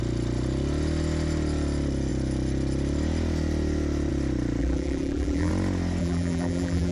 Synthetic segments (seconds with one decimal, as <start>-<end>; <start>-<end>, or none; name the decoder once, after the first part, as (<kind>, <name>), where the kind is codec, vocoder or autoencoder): 4.6-5.5 (vocoder, BigVGAN v2); 6.0-6.9